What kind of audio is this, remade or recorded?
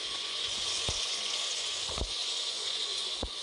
remade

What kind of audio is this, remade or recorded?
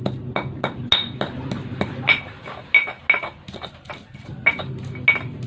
recorded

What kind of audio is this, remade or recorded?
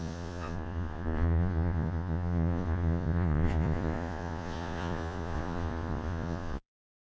remade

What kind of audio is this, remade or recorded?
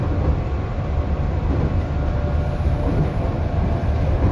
recorded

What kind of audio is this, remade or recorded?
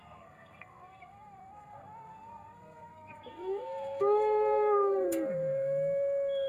remade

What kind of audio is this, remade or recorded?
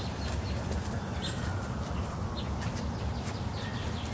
recorded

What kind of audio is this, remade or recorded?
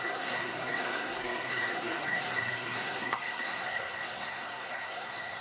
remade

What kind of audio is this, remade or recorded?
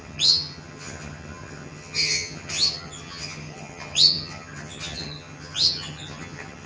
remade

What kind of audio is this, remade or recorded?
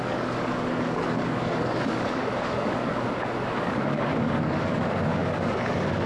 remade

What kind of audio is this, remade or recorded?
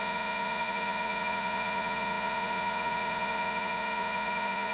remade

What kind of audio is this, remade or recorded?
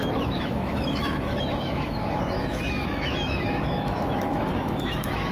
remade